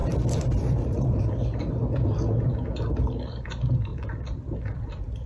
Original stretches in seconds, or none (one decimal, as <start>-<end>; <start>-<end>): 1.2-3.9

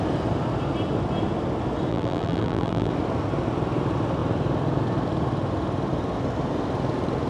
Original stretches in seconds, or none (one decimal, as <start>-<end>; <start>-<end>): 0.0-1.9; 2.9-7.3

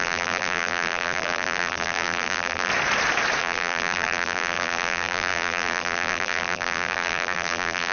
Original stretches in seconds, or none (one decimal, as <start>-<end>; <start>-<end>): 2.7-3.4

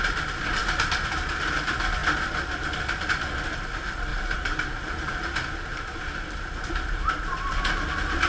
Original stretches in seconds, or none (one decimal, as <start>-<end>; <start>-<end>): 0.0-0.6; 1.4-4.1; 5.1-8.3

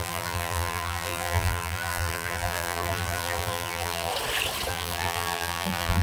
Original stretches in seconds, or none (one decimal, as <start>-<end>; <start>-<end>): 4.1-4.7

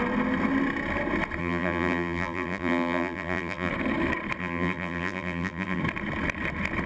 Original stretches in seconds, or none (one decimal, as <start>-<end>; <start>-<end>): 0.0-1.4; 3.7-4.4; 5.8-6.9

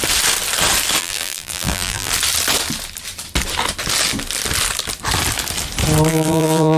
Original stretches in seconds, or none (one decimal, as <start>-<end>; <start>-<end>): 0.0-1.0; 2.1-6.1

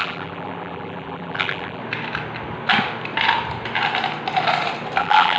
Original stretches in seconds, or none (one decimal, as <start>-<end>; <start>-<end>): 1.8-5.0